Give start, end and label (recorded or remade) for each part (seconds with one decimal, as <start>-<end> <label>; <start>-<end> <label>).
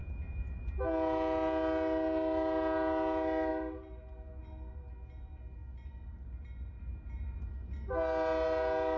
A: 0.0-0.7 remade; 0.7-9.0 recorded